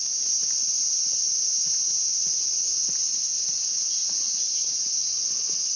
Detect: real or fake real